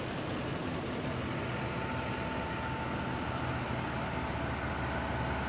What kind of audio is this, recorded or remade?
recorded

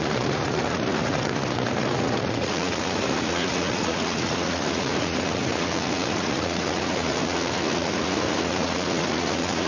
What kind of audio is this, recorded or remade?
remade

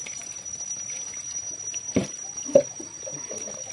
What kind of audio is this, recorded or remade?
recorded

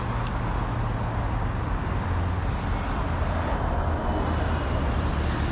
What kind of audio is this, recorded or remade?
recorded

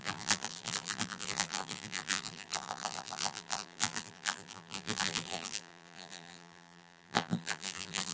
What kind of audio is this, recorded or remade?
remade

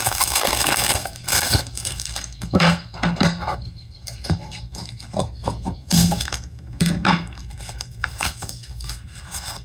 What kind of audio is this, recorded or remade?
remade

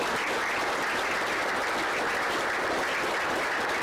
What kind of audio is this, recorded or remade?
recorded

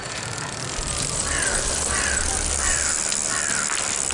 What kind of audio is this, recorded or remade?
recorded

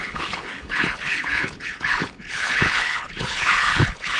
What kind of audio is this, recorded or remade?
remade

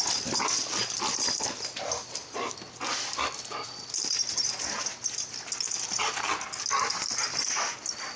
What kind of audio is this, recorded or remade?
recorded